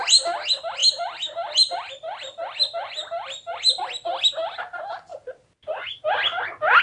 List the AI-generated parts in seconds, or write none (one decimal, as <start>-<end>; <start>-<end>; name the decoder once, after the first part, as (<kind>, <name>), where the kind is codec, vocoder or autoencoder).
0.8-3.8 (vocoder, BigVGAN v2)